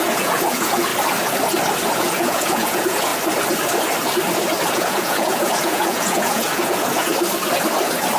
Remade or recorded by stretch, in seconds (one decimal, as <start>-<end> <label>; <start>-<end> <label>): 0.0-0.9 remade; 0.9-2.0 recorded; 2.0-3.1 remade; 3.1-4.7 recorded; 4.7-7.1 remade; 7.1-8.2 recorded